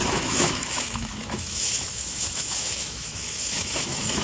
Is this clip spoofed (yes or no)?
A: yes